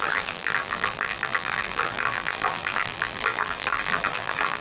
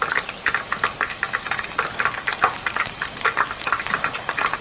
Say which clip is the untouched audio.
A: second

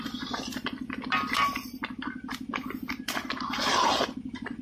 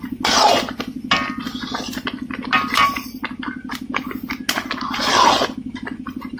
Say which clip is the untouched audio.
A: second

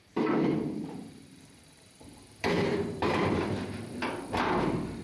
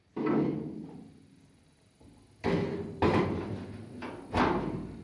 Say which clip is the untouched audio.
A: second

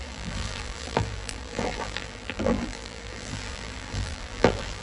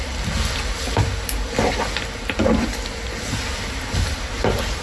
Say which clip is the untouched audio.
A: second